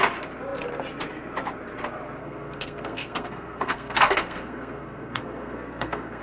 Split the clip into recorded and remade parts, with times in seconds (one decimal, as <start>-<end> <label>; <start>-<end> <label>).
0.0-2.2 recorded; 2.2-6.2 remade

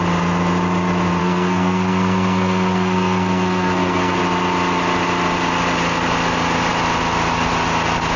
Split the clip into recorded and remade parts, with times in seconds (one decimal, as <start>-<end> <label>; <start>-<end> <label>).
0.0-1.2 recorded; 1.2-4.2 remade; 4.2-8.2 recorded

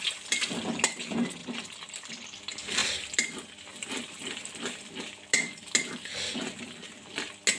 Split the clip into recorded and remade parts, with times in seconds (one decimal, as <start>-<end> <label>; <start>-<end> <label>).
0.0-7.6 recorded